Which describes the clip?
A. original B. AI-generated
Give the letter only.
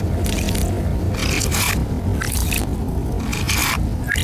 A